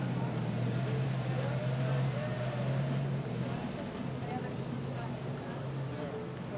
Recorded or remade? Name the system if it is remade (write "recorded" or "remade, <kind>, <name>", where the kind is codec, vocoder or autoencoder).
recorded